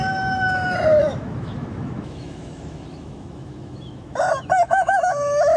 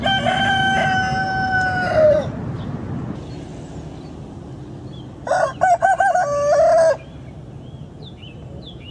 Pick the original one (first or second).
second